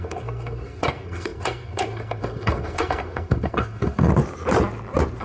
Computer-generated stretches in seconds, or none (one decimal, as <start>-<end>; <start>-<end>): 0.0-4.1